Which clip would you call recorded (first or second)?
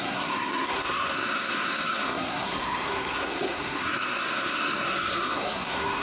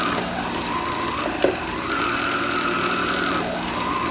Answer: second